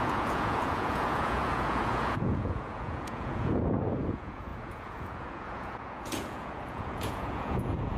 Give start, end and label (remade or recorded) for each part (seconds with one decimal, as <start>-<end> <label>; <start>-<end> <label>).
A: 0.0-8.0 remade